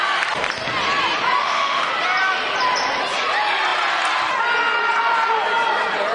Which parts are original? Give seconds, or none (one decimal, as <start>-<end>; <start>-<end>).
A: 0.0-1.4; 1.9-6.1